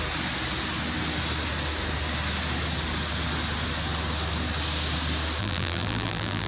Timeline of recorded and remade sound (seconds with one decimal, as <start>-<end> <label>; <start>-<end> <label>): 0.0-5.4 recorded; 5.4-6.5 remade